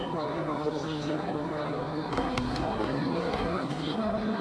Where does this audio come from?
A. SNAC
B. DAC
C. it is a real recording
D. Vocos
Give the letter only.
A